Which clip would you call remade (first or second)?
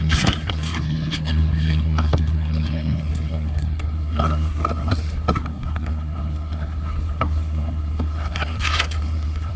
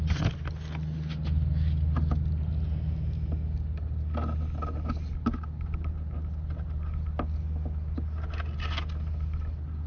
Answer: first